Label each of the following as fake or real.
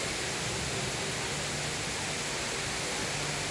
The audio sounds real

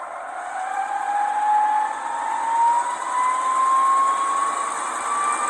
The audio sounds real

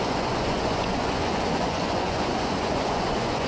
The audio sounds fake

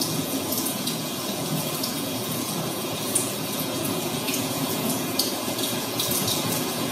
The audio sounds fake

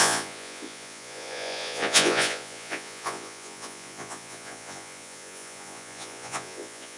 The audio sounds fake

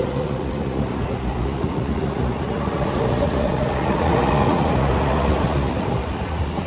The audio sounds fake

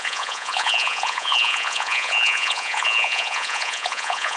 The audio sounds fake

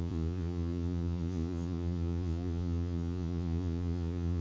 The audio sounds fake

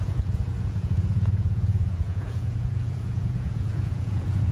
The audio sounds fake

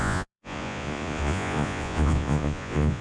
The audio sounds fake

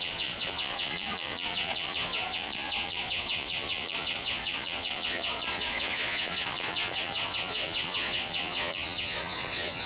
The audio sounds fake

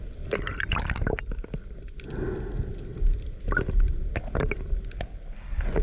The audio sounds real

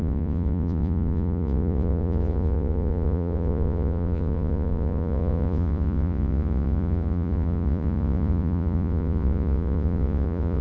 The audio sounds fake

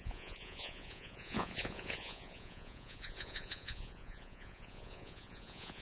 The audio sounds fake